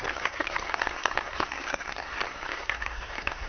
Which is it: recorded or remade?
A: remade